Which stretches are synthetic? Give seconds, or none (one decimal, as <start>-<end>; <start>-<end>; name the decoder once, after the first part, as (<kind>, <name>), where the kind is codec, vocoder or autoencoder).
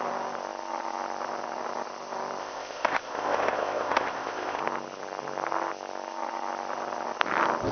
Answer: 2.4-4.6 (codec, ZipCodec)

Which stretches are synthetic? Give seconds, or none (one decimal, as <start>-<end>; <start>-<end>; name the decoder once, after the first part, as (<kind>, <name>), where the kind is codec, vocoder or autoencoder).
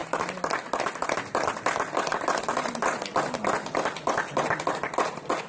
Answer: none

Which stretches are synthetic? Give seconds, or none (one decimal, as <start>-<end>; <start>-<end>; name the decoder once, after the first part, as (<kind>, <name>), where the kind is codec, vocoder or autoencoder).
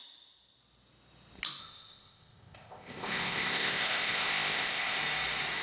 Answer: 1.6-5.0 (codec, ZipCodec)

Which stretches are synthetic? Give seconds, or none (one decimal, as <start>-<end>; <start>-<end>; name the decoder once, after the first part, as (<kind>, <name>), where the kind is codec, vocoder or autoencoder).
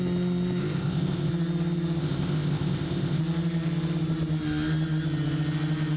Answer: 0.6-1.3 (codec, ZipCodec); 2.0-3.2